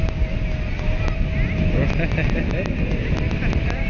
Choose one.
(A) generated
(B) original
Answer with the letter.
B